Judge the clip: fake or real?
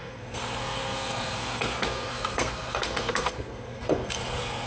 fake